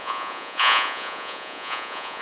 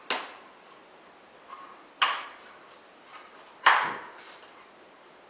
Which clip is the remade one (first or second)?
first